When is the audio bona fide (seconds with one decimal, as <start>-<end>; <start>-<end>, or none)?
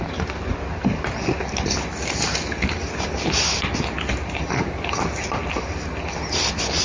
0.0-6.8